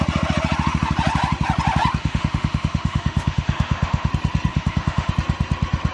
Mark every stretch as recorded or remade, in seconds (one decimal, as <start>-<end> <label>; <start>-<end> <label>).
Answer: 0.0-2.0 recorded; 2.0-4.1 remade; 4.1-4.5 recorded; 4.5-5.1 remade; 5.1-5.9 recorded